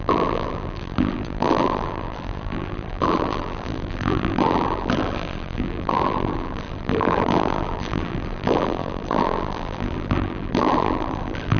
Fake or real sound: fake